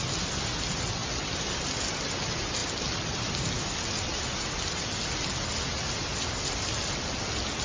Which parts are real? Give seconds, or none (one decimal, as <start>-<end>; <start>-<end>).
0.0-7.6